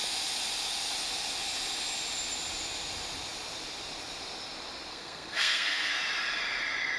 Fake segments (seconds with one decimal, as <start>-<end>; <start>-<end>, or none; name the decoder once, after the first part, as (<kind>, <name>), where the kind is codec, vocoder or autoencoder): 4.9-5.9 (codec, SNAC)